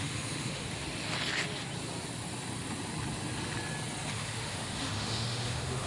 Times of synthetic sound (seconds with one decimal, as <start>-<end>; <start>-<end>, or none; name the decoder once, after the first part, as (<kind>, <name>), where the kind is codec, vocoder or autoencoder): 0.0-0.6 (autoencoder, DAC-VAE); 4.1-5.9